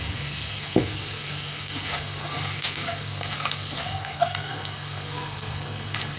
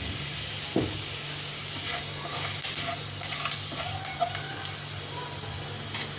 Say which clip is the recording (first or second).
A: second